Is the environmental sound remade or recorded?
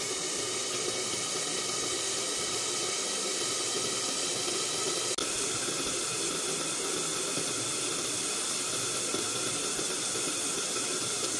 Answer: recorded